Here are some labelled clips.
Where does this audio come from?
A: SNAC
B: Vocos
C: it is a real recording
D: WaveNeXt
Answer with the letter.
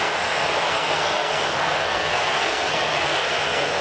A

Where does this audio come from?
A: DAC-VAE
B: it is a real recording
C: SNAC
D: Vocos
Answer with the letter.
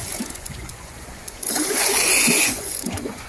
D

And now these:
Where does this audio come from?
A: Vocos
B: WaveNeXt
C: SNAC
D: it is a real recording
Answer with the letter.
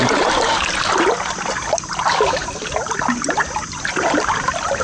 D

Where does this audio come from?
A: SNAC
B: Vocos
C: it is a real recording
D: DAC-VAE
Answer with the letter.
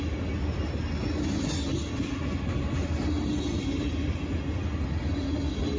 C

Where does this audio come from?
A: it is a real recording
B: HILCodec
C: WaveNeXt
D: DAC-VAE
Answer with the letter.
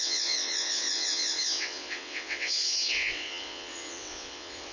C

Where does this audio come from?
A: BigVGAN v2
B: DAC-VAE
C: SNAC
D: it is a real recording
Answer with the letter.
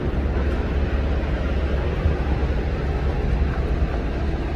D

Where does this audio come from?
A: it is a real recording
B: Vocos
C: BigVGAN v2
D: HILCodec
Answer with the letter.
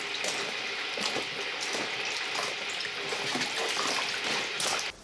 A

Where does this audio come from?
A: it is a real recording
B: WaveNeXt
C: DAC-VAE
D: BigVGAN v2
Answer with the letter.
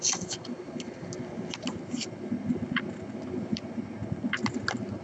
A